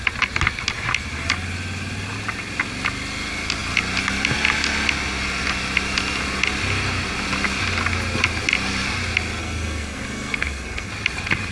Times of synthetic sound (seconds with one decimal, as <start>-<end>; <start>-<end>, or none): 9.4-10.9